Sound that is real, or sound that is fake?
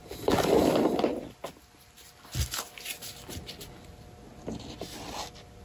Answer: real